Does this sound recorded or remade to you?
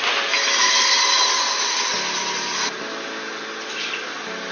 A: recorded